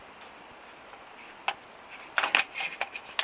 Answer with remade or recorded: recorded